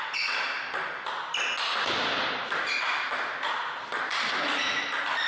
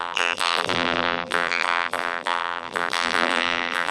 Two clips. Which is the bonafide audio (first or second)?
first